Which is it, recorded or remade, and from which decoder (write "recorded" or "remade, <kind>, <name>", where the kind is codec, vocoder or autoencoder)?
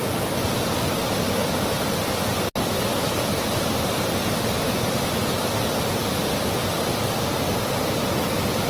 recorded